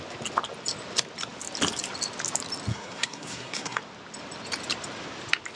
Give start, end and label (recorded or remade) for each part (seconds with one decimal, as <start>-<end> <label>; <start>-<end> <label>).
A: 0.0-2.7 recorded; 2.7-3.8 remade; 3.8-5.6 recorded